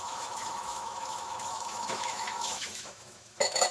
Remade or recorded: remade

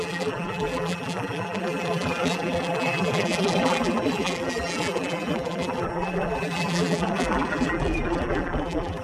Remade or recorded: remade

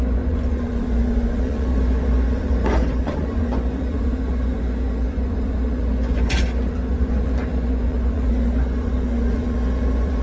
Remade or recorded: remade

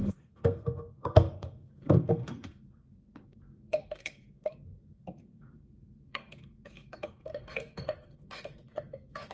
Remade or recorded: remade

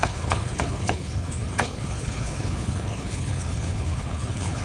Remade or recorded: remade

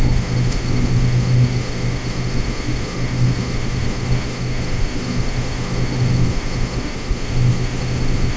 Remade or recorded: remade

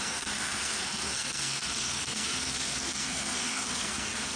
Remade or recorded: remade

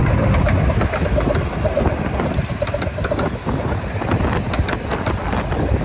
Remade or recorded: recorded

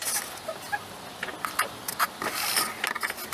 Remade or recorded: recorded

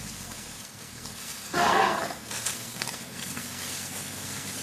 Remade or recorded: remade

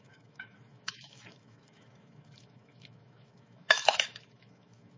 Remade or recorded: remade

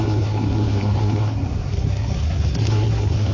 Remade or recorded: remade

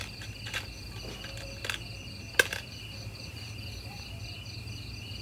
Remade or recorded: recorded